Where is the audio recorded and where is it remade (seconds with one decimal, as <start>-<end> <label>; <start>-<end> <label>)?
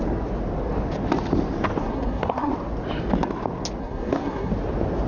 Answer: 0.0-1.8 recorded; 1.8-2.5 remade; 2.5-3.8 recorded; 3.8-4.5 remade; 4.5-5.1 recorded